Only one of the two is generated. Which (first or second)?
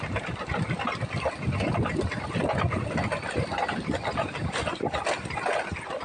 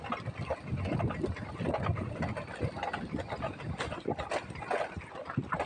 first